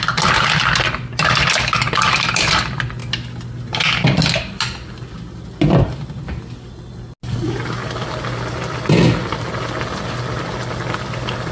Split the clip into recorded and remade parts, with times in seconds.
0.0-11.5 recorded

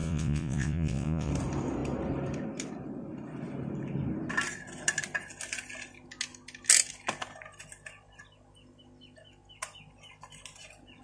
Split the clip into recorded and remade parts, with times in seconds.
0.0-1.3 remade; 1.3-11.0 recorded

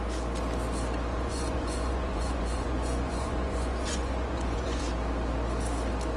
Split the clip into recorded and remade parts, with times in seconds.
0.0-1.1 recorded; 1.1-4.8 remade; 4.8-6.2 recorded

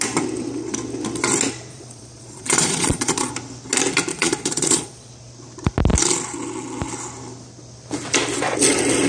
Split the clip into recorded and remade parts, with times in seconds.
0.0-1.7 recorded; 1.7-3.3 remade; 3.3-4.1 recorded; 4.1-5.1 remade; 5.1-9.1 recorded

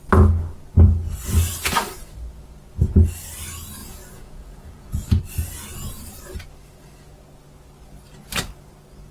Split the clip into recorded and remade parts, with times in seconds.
0.0-3.8 recorded; 3.8-5.2 remade; 5.2-9.1 recorded

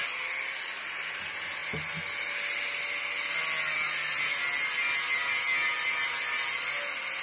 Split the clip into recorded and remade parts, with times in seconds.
0.0-7.2 recorded

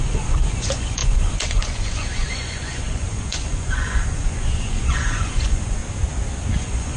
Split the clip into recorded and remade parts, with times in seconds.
0.0-5.8 remade; 5.8-6.6 recorded; 6.6-7.0 remade